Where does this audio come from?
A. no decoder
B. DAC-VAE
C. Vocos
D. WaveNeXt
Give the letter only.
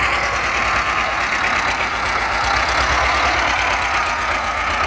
A